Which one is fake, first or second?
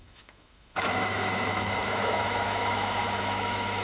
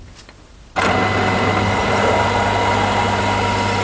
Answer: first